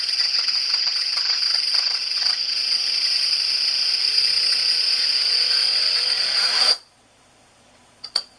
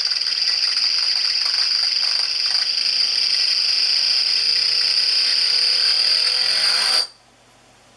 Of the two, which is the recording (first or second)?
second